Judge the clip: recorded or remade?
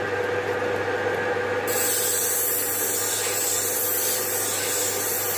recorded